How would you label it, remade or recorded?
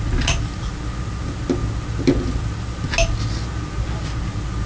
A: recorded